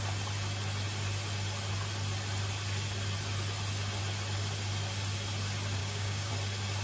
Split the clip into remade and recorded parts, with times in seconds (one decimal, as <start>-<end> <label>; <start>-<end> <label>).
0.0-5.8 recorded; 5.8-6.3 remade; 6.3-6.8 recorded